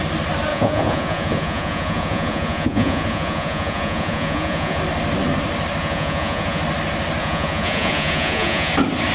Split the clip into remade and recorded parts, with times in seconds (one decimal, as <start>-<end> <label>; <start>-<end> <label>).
0.0-0.5 recorded; 0.5-4.8 remade; 4.8-5.8 recorded; 5.8-6.6 remade; 6.6-7.2 recorded; 7.2-8.7 remade; 8.7-9.1 recorded